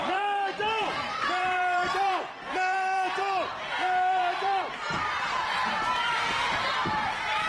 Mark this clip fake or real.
fake